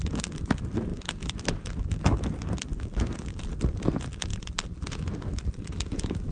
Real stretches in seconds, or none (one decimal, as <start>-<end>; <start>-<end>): 0.9-3.6